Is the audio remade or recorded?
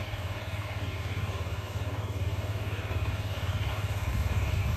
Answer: remade